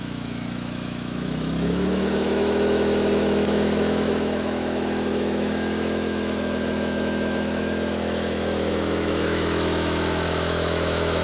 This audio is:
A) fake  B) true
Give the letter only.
A